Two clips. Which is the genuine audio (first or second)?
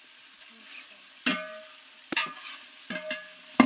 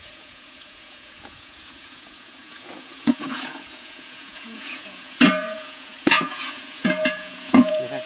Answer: first